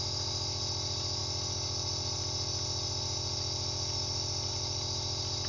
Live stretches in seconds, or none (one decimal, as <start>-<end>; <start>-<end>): 0.0-5.5